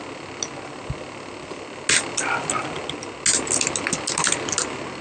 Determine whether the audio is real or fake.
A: real